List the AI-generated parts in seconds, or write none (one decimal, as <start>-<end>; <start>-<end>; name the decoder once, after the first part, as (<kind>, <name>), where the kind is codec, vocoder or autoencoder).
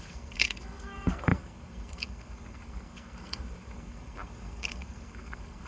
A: 0.0-5.7 (codec, SNAC)